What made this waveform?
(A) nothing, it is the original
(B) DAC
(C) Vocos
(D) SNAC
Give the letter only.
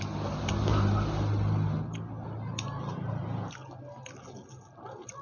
A